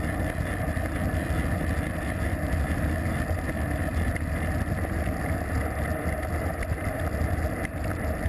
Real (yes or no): yes